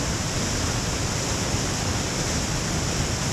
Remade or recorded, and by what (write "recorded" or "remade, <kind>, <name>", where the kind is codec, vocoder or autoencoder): recorded